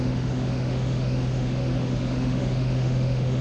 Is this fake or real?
fake